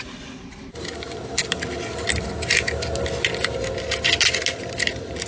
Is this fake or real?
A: real